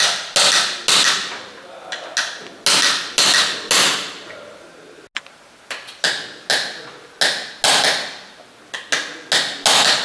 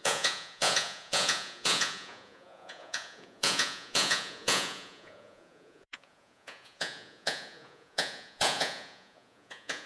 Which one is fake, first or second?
second